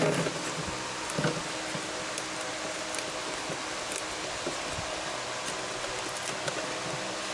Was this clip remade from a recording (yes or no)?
no